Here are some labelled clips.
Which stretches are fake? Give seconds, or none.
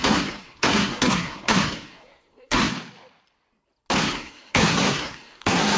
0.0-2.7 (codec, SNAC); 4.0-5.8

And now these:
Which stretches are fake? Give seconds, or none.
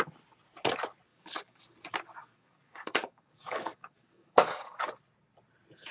1.1-1.6 (codec, DAC); 2.2-5.0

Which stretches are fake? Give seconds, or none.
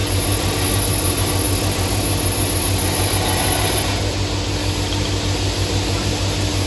0.0-4.0 (vocoder, BigVGAN v2)